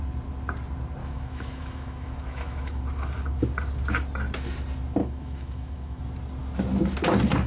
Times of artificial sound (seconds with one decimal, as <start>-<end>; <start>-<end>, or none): 1.0-2.8; 5.0-6.0